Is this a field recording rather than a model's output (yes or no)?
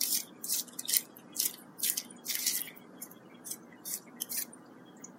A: no